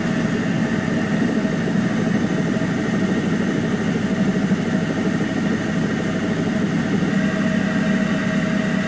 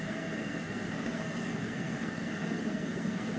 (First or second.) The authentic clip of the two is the first